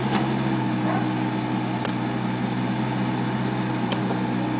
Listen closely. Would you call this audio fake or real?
real